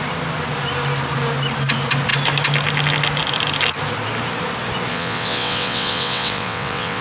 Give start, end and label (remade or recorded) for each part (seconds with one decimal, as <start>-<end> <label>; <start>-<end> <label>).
0.0-4.9 recorded; 4.9-7.0 remade

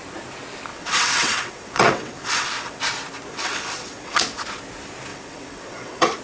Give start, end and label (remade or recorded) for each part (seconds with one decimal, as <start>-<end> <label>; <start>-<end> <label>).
0.0-0.7 recorded; 0.7-2.8 remade; 2.8-3.3 recorded; 3.3-4.2 remade; 4.2-5.1 recorded; 5.1-6.2 remade

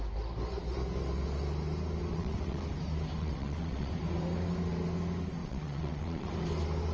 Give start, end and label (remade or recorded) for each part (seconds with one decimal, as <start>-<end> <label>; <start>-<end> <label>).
0.0-2.1 recorded; 2.1-2.7 remade; 2.7-3.2 recorded; 3.2-3.9 remade; 3.9-5.4 recorded; 5.4-6.3 remade; 6.3-6.9 recorded

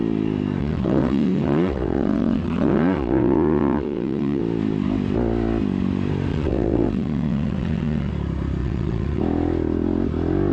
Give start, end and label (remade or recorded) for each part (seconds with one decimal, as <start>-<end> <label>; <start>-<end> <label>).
0.0-0.6 recorded; 0.6-4.4 remade; 4.4-6.3 recorded; 6.3-8.1 remade; 8.1-8.6 recorded; 8.6-9.2 remade; 9.2-10.5 recorded

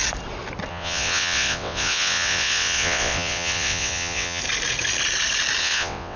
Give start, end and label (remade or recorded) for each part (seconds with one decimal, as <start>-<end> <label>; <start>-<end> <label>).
0.0-0.7 recorded; 0.7-4.4 remade; 4.4-5.6 recorded; 5.6-6.2 remade